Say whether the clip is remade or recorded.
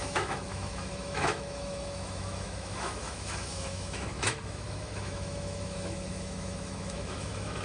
remade